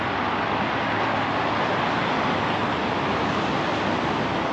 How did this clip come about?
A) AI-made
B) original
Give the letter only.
B